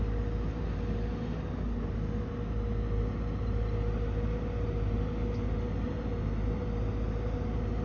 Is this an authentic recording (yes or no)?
yes